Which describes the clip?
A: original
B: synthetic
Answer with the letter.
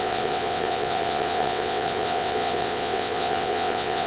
B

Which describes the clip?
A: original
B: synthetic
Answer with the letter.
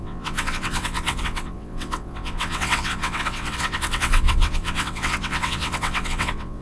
B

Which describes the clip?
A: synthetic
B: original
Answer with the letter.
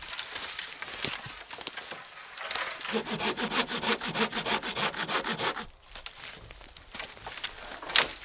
B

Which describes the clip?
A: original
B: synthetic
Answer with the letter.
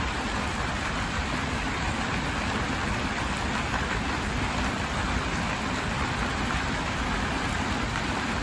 A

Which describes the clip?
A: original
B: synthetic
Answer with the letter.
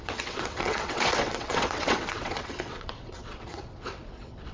B